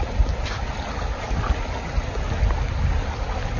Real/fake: real